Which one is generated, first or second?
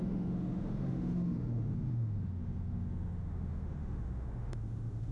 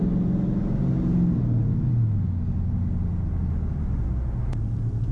first